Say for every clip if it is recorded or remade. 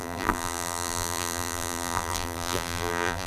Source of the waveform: remade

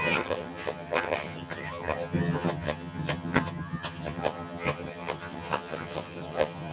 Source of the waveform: remade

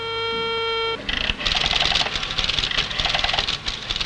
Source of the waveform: recorded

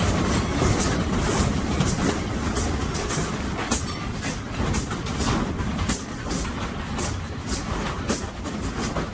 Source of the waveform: recorded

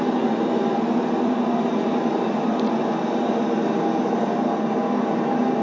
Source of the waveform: recorded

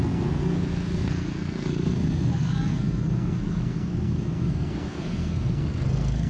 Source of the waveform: remade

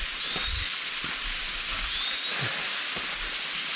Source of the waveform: recorded